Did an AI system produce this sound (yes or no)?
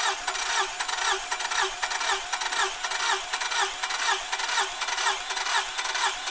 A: no